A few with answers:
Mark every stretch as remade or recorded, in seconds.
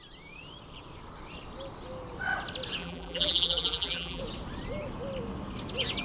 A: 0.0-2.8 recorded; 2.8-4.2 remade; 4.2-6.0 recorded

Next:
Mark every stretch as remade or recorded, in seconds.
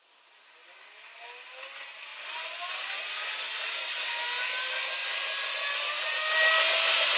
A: 0.0-7.2 recorded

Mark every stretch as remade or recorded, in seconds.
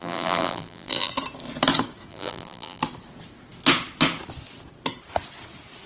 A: 0.0-1.1 remade; 1.1-2.1 recorded; 2.1-2.8 remade; 2.8-5.9 recorded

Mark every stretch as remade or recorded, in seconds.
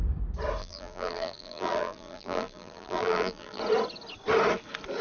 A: 0.0-0.6 recorded; 0.6-3.6 remade; 3.6-5.0 recorded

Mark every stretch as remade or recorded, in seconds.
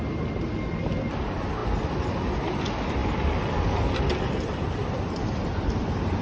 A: 0.0-6.2 recorded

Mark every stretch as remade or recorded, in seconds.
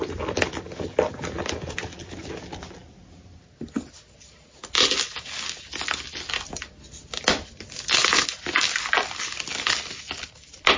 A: 0.0-10.8 recorded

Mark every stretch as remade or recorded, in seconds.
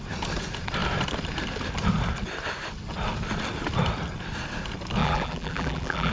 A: 0.0-5.0 recorded; 5.0-6.1 remade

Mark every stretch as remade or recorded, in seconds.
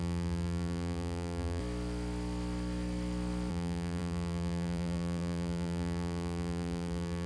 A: 0.0-1.6 remade; 1.6-3.5 recorded; 3.5-7.3 remade